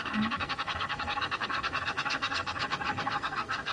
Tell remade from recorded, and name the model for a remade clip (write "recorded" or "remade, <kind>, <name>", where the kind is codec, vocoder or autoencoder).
remade, codec, SNAC